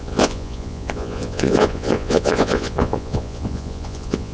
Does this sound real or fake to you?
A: fake